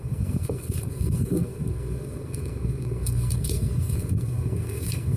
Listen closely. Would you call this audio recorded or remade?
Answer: remade